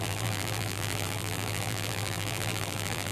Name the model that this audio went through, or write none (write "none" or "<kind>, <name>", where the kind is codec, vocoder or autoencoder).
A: vocoder, BigVGAN v2